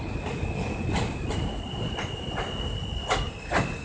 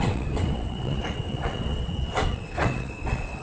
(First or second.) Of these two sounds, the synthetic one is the second